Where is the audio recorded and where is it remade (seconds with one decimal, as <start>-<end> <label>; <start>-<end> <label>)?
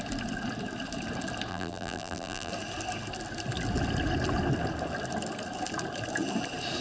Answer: 0.0-1.5 recorded; 1.5-2.5 remade; 2.5-6.8 recorded